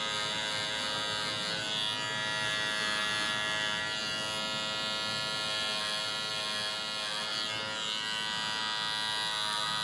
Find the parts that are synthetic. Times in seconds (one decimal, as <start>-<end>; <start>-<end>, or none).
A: none